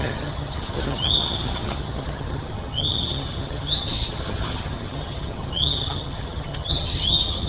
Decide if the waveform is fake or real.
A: fake